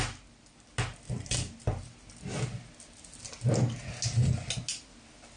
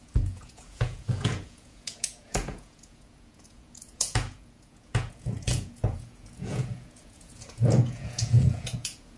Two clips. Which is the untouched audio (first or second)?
first